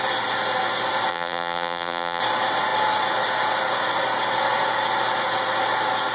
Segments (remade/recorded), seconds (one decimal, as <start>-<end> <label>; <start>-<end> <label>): 0.0-1.1 recorded; 1.1-2.2 remade; 2.2-6.1 recorded